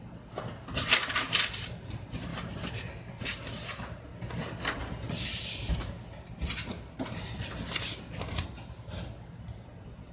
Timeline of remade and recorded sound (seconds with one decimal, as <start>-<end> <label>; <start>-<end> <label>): 0.0-10.1 recorded